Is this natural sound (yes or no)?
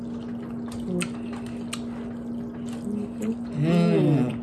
yes